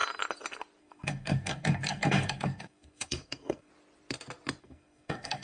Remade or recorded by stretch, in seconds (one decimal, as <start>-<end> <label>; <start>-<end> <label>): 0.0-0.8 recorded; 0.8-3.7 remade; 3.7-4.6 recorded; 4.6-5.4 remade